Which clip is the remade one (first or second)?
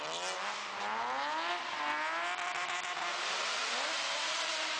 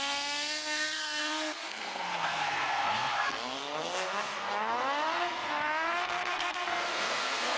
second